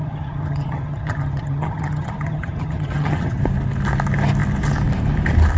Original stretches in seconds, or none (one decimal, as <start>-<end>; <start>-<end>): 3.4-5.6